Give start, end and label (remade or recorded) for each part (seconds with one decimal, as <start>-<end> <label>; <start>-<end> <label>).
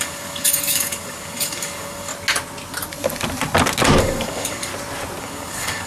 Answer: 0.0-2.1 remade; 2.1-4.0 recorded; 4.0-4.7 remade; 4.7-5.2 recorded; 5.2-5.9 remade